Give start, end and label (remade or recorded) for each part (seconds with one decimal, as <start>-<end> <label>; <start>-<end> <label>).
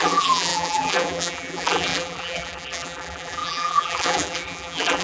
0.0-5.0 remade